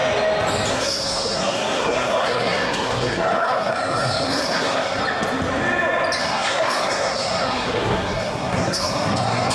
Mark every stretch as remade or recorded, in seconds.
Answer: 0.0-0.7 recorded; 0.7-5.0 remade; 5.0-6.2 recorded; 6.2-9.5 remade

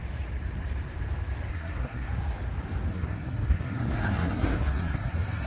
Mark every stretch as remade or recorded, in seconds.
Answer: 0.0-1.5 recorded; 1.5-2.1 remade; 2.1-2.9 recorded; 2.9-5.5 remade

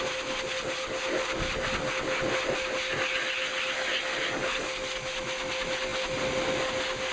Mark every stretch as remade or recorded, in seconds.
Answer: 0.0-7.1 recorded